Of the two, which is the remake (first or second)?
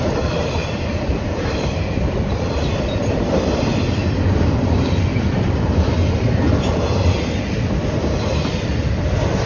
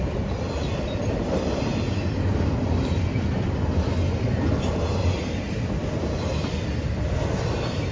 first